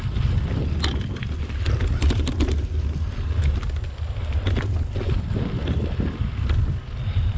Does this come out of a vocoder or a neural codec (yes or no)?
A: no